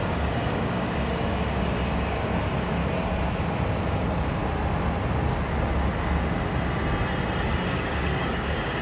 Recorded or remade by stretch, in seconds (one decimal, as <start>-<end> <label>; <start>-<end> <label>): 0.0-2.8 remade; 2.8-3.9 recorded; 3.9-4.4 remade; 4.4-7.4 recorded; 7.4-8.8 remade